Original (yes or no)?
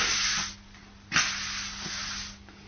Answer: yes